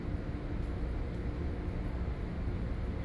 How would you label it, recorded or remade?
recorded